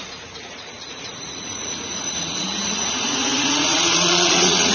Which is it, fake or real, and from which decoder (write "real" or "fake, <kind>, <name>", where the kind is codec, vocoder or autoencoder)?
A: fake, vocoder, Vocos